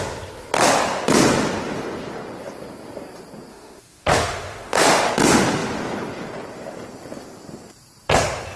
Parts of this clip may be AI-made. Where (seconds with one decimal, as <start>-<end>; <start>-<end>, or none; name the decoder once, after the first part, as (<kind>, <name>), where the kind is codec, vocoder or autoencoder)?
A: 3.5-5.1 (autoencoder, DAC-VAE)